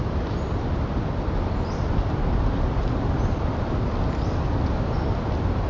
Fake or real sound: real